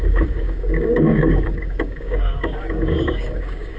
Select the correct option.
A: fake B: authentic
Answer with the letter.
A